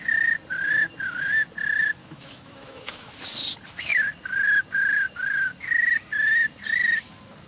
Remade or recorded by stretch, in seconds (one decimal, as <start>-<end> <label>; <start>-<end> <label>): 0.0-2.0 recorded; 2.0-3.1 remade; 3.1-7.5 recorded